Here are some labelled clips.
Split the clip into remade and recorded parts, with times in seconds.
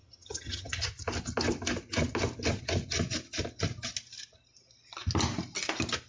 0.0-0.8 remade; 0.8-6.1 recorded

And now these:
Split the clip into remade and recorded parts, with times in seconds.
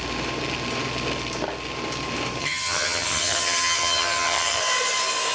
0.0-2.4 recorded; 2.4-4.6 remade; 4.6-5.3 recorded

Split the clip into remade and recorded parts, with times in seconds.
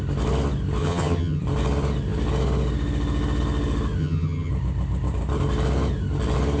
0.0-0.8 recorded; 0.8-1.4 remade; 1.4-4.0 recorded; 4.0-4.5 remade; 4.5-6.6 recorded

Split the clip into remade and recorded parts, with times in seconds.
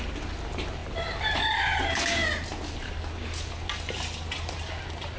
0.0-5.2 recorded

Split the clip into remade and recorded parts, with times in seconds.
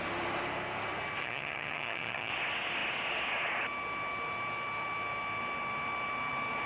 0.0-1.2 recorded; 1.2-2.3 remade; 2.3-6.7 recorded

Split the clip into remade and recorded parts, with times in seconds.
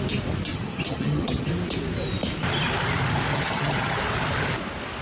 0.0-0.5 recorded; 0.5-1.5 remade; 1.5-3.3 recorded; 3.3-4.0 remade; 4.0-5.0 recorded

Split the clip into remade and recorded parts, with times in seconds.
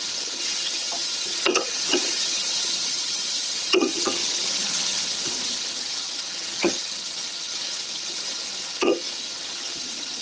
0.0-10.2 remade